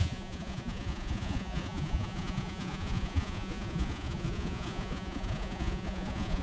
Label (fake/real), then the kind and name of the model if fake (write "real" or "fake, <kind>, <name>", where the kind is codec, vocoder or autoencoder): fake, vocoder, Vocos